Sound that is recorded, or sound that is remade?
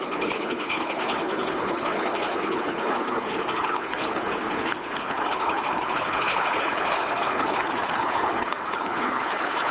remade